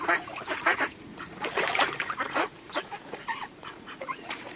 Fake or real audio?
fake